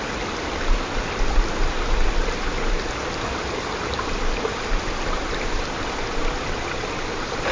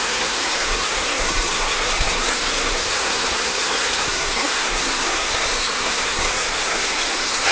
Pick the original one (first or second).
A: first